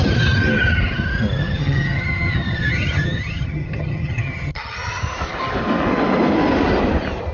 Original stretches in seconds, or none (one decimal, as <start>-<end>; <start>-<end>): 0.0-1.4; 5.0-7.3